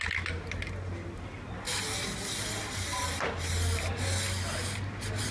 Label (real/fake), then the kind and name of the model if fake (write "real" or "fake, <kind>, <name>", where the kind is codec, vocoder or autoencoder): real